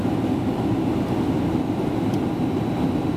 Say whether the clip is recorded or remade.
recorded